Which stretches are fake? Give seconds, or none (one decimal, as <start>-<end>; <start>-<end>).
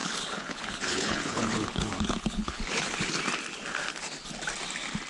0.0-3.1